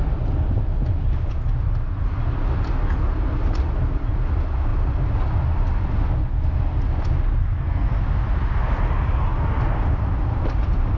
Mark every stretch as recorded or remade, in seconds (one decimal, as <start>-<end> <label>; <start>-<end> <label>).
0.0-7.4 recorded; 7.4-8.0 remade; 8.0-11.0 recorded